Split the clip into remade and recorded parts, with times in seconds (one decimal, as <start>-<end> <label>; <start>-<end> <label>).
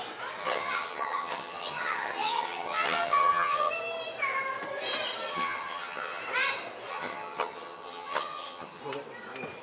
0.0-0.4 recorded; 0.4-3.7 remade; 3.7-5.3 recorded; 5.3-6.2 remade; 6.2-6.9 recorded; 6.9-8.8 remade; 8.8-9.6 recorded